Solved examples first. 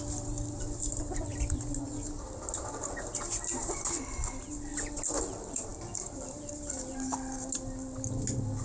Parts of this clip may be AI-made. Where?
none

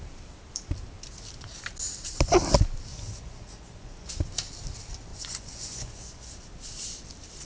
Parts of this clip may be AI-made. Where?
2.9-4.1 (vocoder, Vocos); 5.1-6.3

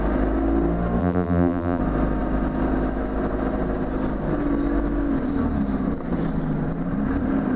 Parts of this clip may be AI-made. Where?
1.0-1.8 (vocoder, BigVGAN v2)

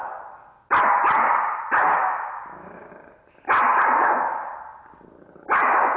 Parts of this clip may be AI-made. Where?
2.0-2.9 (autoencoder, DAC-VAE)

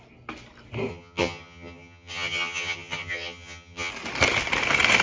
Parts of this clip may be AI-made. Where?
0.9-3.9 (vocoder, HiFi-GAN)